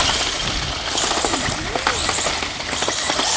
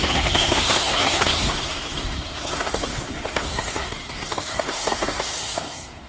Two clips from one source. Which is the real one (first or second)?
first